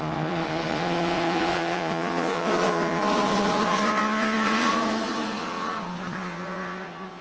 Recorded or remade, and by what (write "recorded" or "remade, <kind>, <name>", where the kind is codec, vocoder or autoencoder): remade, vocoder, Vocos